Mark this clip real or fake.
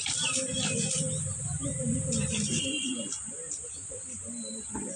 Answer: real